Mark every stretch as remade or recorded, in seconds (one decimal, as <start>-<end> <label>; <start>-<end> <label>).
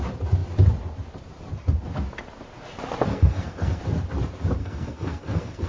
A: 0.0-3.1 recorded; 3.1-3.8 remade; 3.8-4.6 recorded; 4.6-5.7 remade